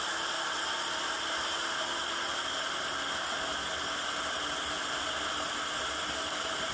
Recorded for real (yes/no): yes